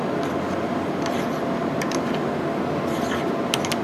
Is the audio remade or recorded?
recorded